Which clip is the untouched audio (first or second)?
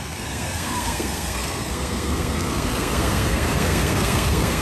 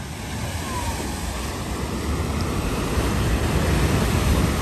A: second